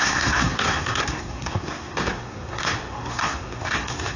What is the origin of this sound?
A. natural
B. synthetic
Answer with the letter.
B